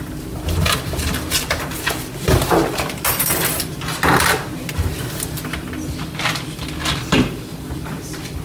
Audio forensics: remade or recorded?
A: recorded